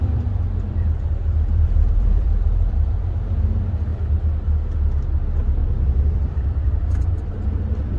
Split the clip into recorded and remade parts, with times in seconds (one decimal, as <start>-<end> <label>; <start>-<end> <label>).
0.0-3.0 remade; 3.0-5.6 recorded; 5.6-7.5 remade; 7.5-8.0 recorded